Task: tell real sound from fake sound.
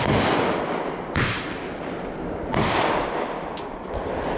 real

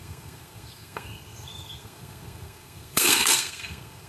fake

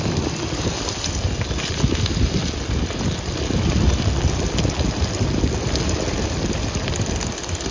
real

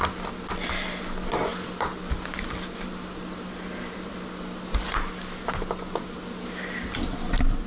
real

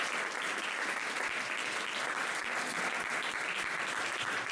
real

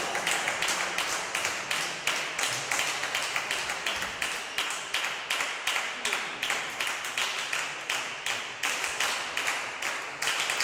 real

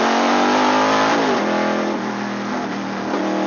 real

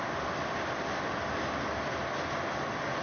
real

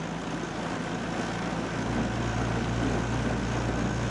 real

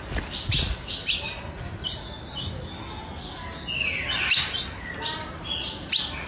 real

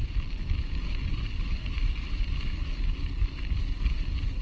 real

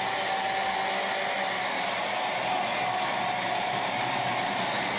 real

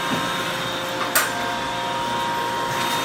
real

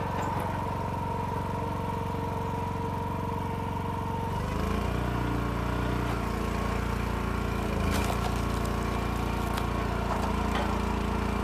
real